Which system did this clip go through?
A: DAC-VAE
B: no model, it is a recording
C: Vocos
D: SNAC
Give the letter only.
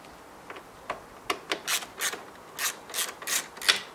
B